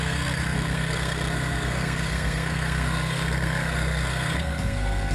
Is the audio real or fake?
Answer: fake